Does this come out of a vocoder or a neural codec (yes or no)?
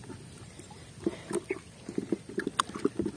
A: no